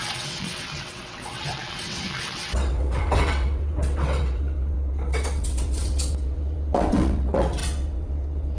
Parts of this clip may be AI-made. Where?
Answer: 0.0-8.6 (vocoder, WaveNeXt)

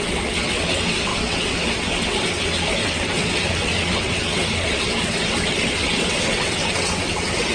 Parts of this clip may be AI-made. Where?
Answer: 0.0-7.5 (vocoder, WaveNeXt)

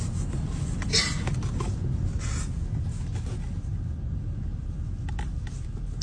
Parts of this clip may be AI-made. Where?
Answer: none

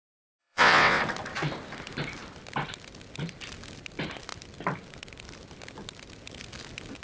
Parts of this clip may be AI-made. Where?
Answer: 0.4-1.0 (vocoder, WaveNeXt)